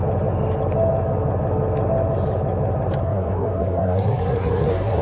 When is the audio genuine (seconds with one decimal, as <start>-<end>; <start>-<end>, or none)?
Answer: 0.0-3.0